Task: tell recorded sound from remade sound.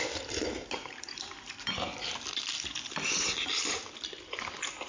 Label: recorded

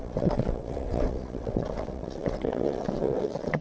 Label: remade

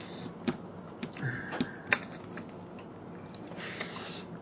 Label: recorded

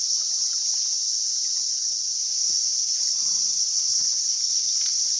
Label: remade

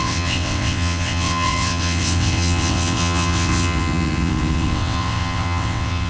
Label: remade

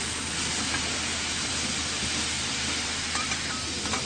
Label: recorded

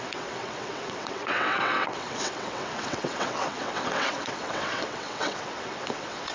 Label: remade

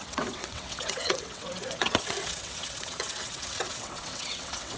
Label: remade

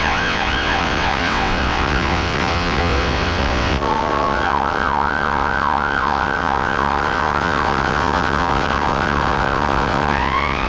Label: remade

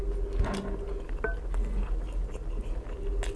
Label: recorded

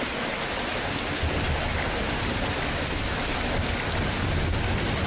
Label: recorded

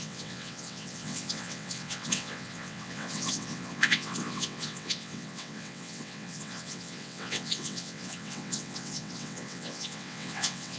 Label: remade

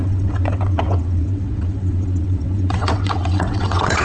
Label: remade